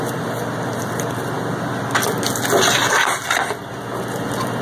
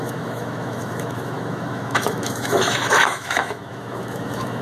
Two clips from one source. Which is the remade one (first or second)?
second